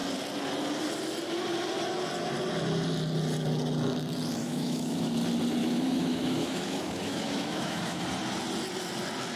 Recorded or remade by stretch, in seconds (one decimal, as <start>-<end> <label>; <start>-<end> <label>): 0.0-4.4 recorded; 4.4-5.1 remade; 5.1-5.6 recorded; 5.6-8.0 remade; 8.0-9.4 recorded